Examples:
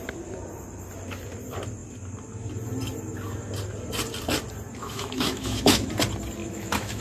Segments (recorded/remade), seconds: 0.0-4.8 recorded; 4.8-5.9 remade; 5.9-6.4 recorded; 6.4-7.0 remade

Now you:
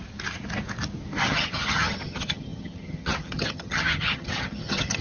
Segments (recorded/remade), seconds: 0.0-1.2 recorded; 1.2-5.0 remade

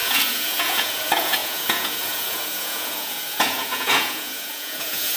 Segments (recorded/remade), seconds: 0.0-5.2 remade

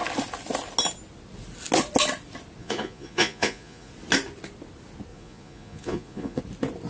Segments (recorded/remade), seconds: 0.0-2.6 recorded; 2.6-3.9 remade; 3.9-5.1 recorded; 5.1-6.4 remade; 6.4-6.9 recorded

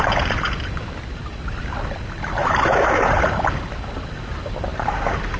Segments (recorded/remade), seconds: 0.0-2.4 recorded; 2.4-3.1 remade; 3.1-4.7 recorded; 4.7-5.4 remade

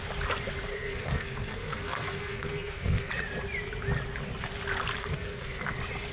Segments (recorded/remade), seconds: 0.0-0.7 recorded; 0.7-3.1 remade; 3.1-5.0 recorded; 5.0-5.6 remade; 5.6-6.1 recorded

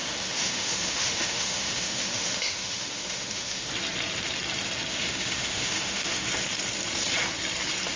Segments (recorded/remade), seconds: 0.0-3.7 remade; 3.7-4.9 recorded; 4.9-6.3 remade; 6.3-8.0 recorded